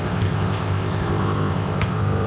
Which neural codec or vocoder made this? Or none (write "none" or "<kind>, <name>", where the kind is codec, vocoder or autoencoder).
codec, ZipCodec